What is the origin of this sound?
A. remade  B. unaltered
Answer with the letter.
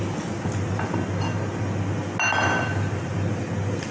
B